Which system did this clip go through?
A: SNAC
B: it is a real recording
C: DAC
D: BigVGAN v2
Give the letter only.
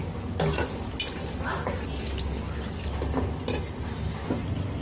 B